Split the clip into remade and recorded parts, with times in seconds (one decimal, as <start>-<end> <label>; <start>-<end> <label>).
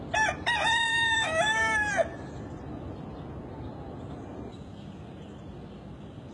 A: 0.0-0.9 recorded; 0.9-1.9 remade; 1.9-6.3 recorded